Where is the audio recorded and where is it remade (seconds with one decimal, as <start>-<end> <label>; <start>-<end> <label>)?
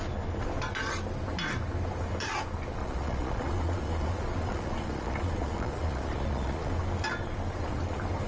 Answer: 0.0-2.8 recorded; 2.8-6.7 remade; 6.7-8.3 recorded